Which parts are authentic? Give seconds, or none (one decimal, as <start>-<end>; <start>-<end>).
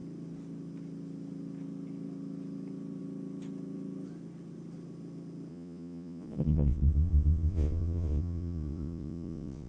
0.0-5.5